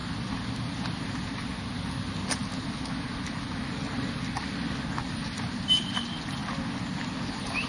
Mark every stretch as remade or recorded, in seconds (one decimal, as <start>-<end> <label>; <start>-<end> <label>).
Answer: 0.0-7.7 recorded